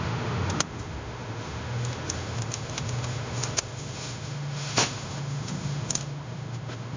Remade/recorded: remade